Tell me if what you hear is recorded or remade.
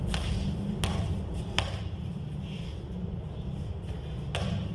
recorded